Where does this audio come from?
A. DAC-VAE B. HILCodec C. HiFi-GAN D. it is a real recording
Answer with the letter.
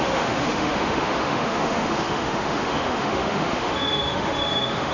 A